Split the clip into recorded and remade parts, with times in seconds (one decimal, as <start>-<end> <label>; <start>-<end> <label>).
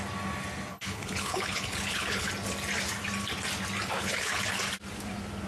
0.0-0.7 recorded; 0.7-2.3 remade; 2.3-3.9 recorded; 3.9-4.6 remade; 4.6-5.5 recorded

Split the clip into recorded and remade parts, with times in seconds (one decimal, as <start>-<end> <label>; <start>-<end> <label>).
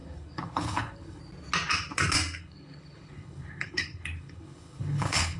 0.0-1.2 remade; 1.2-2.4 recorded; 2.4-5.4 remade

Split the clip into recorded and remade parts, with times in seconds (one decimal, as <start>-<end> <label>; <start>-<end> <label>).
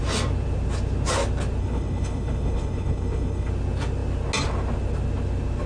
0.0-1.6 recorded; 1.6-3.5 remade; 3.5-5.7 recorded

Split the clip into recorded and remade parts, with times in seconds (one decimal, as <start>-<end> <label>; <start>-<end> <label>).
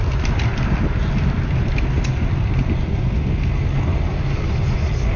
0.0-5.2 recorded